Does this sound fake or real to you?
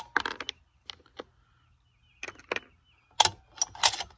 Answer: real